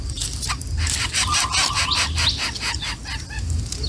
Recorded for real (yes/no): yes